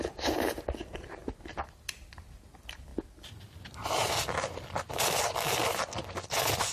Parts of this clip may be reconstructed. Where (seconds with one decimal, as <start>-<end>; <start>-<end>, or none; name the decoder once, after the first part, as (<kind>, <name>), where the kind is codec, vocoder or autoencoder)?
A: none